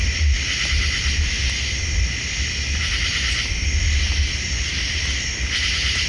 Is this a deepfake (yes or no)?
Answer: no